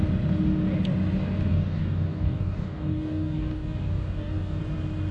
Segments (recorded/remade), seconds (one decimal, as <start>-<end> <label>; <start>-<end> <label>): 0.0-1.5 recorded; 1.5-4.6 remade; 4.6-5.1 recorded